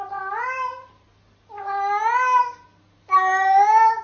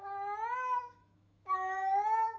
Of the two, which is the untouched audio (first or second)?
first